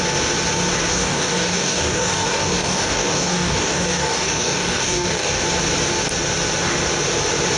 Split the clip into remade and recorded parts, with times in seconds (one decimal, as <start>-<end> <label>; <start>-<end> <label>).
0.0-0.9 recorded; 0.9-5.4 remade; 5.4-7.6 recorded